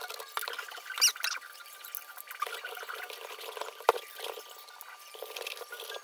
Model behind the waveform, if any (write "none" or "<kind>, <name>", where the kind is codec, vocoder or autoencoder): none